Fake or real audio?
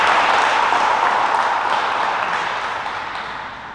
real